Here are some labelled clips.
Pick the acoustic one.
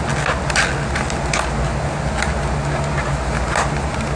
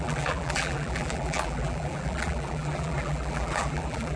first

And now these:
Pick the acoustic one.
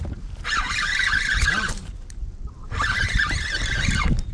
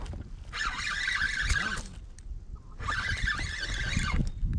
second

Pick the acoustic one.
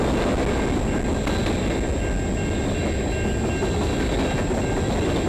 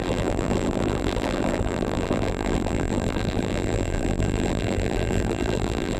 first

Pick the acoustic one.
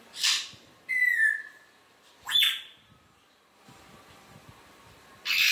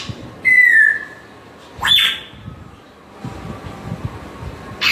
second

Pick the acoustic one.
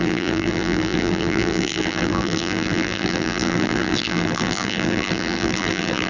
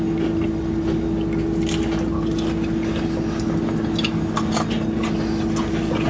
second